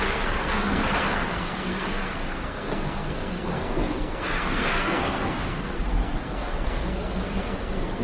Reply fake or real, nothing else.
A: fake